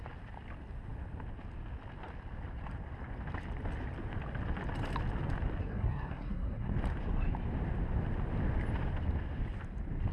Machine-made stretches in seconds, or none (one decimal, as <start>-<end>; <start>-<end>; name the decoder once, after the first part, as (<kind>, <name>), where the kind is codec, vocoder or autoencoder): 5.6-6.7 (codec, SNAC)